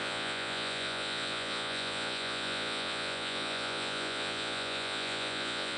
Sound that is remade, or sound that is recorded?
remade